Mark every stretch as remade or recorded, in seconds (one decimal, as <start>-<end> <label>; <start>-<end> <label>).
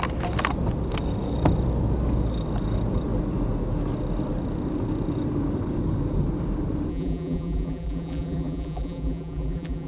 0.0-6.9 recorded; 6.9-9.9 remade